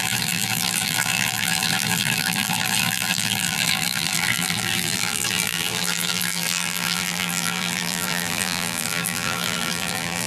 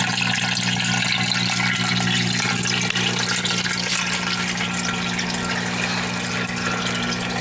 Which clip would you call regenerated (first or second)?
first